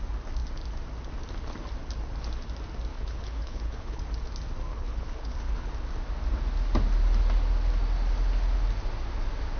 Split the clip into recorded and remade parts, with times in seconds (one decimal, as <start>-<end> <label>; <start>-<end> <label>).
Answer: 0.0-2.9 recorded; 2.9-4.0 remade; 4.0-4.7 recorded; 4.7-5.7 remade; 5.7-9.6 recorded